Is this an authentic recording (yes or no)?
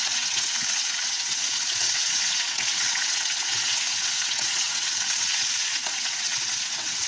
no